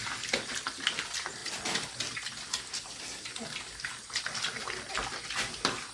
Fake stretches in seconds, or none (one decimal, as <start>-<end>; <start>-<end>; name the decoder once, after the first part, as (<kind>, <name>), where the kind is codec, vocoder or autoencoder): none